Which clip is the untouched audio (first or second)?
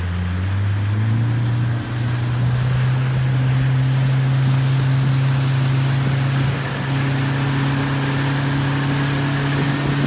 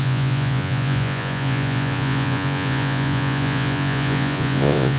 first